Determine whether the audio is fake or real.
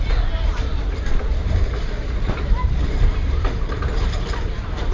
fake